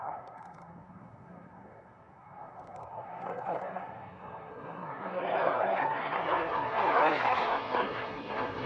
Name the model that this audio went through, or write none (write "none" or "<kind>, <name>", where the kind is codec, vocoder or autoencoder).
codec, SNAC